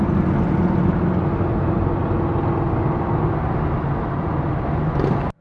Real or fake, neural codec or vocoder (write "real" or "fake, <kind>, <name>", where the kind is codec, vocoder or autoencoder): real